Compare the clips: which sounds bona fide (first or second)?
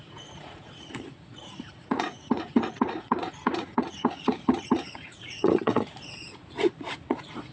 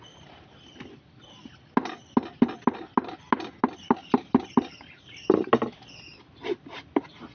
second